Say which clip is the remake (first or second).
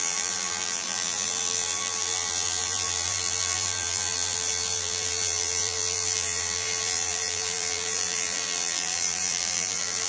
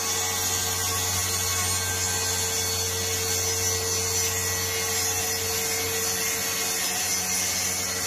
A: first